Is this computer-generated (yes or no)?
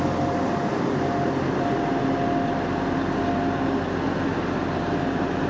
no